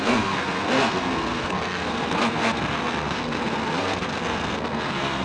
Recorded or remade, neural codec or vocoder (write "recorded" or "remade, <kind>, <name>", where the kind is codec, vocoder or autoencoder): remade, codec, SNAC